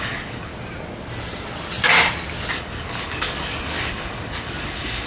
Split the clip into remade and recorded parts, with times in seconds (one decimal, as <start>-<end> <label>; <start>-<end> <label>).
0.0-0.5 remade; 0.5-2.5 recorded; 2.5-5.1 remade